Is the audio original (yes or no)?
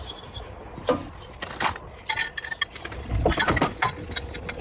yes